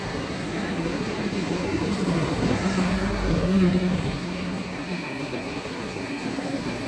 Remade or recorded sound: remade